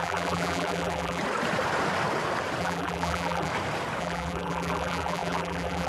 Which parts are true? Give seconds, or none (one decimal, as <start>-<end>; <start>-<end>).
1.2-2.6; 3.5-4.0